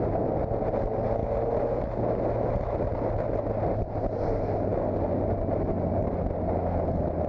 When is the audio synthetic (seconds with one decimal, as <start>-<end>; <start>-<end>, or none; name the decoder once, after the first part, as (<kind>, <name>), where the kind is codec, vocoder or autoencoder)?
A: none